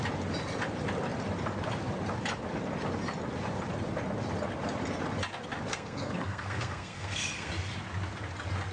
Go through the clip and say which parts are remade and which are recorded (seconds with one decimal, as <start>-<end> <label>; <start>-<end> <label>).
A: 0.0-5.7 recorded; 5.7-7.5 remade; 7.5-8.7 recorded